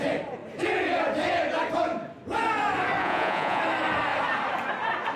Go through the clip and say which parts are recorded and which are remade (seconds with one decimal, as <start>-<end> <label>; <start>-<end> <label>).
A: 0.0-3.0 recorded; 3.0-3.6 remade; 3.6-5.2 recorded